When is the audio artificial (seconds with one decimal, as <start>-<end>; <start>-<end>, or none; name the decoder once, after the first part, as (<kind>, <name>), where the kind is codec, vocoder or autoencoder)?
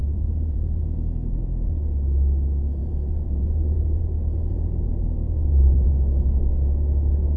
0.0-0.8 (vocoder, BigVGAN v2); 2.8-5.9